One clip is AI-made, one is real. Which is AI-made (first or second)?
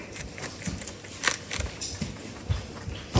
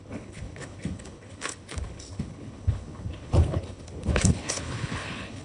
second